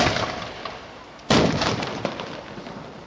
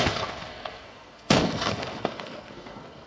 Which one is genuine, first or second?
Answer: first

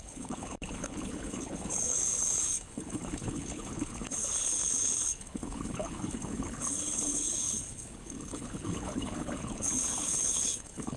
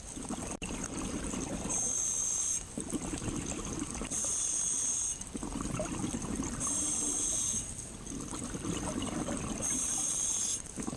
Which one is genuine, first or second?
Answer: second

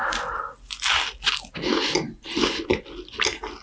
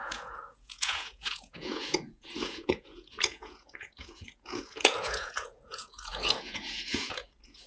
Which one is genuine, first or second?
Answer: first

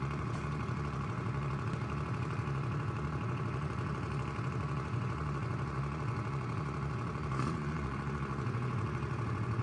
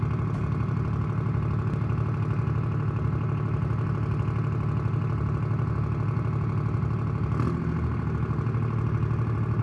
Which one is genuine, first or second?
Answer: second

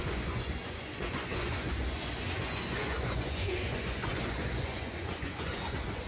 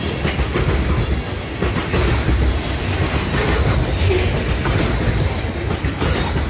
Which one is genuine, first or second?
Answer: second